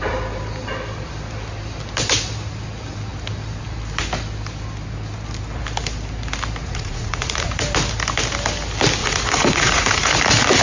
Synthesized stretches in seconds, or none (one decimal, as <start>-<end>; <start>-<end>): 6.6-7.5; 9.0-10.1